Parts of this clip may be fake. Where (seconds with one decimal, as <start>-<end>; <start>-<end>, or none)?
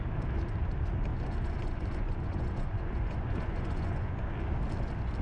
1.1-4.2